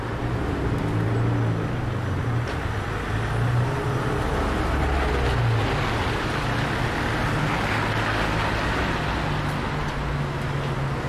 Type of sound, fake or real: real